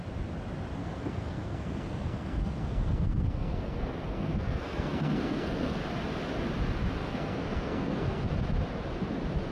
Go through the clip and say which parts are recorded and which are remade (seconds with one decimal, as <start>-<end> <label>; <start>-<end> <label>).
0.0-0.8 recorded; 0.8-5.8 remade; 5.8-7.0 recorded; 7.0-8.3 remade; 8.3-9.5 recorded